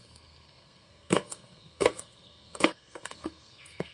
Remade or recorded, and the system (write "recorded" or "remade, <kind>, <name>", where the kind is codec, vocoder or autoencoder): remade, codec, SNAC